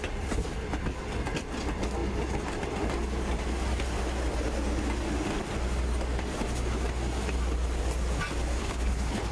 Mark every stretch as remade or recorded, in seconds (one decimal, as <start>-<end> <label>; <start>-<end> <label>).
0.0-8.6 recorded; 8.6-9.3 remade